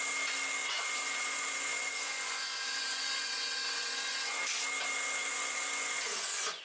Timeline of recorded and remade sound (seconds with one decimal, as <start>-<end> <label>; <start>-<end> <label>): 0.0-0.6 recorded; 0.6-4.4 remade; 4.4-5.2 recorded; 5.2-6.6 remade